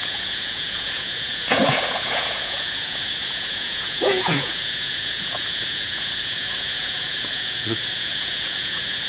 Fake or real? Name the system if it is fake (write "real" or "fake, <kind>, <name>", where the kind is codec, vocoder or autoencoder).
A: fake, vocoder, Vocos